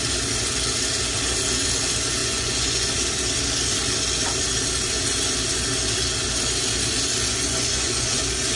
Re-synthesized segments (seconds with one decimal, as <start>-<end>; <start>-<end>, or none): 2.2-2.9; 7.3-8.2